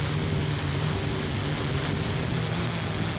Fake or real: real